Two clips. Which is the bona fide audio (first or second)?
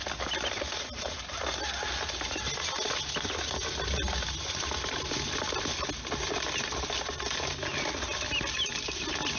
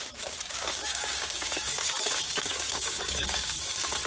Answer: first